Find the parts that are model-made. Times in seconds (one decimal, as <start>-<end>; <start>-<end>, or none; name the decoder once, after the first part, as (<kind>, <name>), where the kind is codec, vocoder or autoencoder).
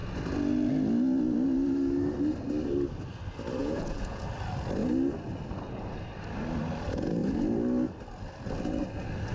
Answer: 3.6-4.2 (vocoder, Vocos)